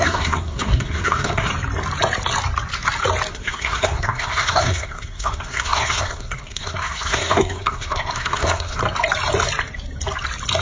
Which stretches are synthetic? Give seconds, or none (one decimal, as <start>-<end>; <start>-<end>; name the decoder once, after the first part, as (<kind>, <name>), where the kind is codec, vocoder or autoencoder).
0.0-1.5 (codec, SNAC); 3.3-8.8